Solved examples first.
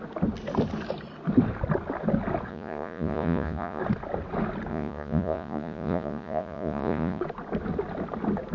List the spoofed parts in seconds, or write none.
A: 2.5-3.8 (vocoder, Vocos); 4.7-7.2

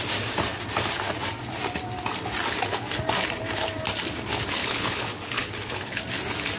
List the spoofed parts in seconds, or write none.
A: 4.6-6.0 (codec, HILCodec)